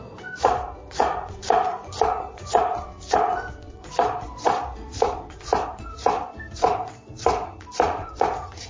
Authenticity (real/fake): fake